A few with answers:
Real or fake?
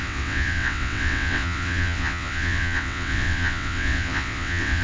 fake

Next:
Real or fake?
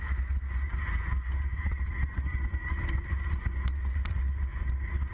real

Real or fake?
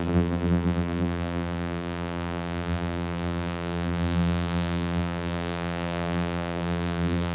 fake